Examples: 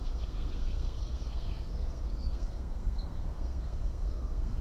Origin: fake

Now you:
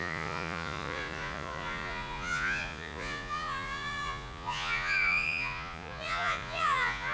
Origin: fake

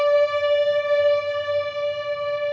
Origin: real